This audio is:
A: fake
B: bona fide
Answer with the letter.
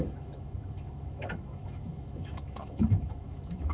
A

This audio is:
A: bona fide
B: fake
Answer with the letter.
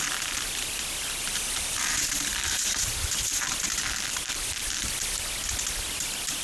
A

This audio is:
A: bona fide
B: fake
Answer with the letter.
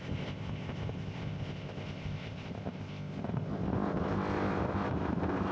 B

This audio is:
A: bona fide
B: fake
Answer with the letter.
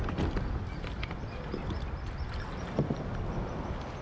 A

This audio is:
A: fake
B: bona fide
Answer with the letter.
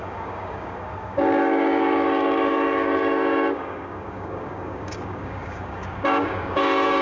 A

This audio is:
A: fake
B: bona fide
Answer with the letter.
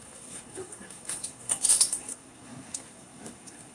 A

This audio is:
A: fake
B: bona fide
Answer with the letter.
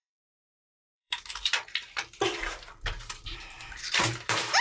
A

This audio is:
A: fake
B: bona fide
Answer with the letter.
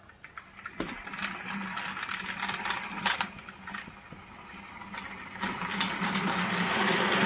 B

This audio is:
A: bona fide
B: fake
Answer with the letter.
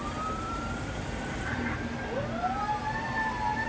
B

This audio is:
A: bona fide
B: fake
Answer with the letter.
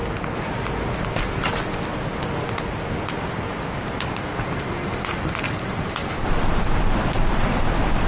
A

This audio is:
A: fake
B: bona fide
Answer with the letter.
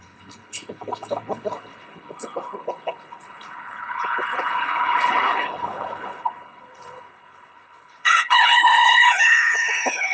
A